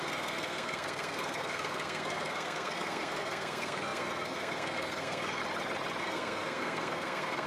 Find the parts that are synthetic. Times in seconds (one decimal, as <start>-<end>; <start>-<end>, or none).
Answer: 0.0-5.4; 6.0-7.5

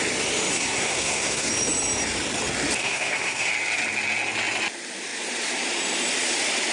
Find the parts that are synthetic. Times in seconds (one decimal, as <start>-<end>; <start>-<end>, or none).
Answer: 0.5-1.5; 2.8-3.5

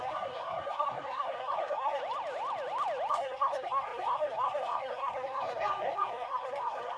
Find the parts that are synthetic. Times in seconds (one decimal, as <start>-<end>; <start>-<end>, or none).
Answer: 0.0-2.0; 3.1-7.0

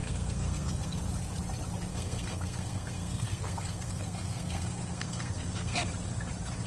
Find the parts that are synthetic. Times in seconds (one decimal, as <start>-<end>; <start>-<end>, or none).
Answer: 0.0-1.0; 1.9-5.9